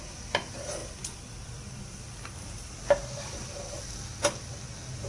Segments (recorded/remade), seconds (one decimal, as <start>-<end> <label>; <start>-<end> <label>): 0.0-0.8 recorded; 0.8-3.9 remade; 3.9-5.1 recorded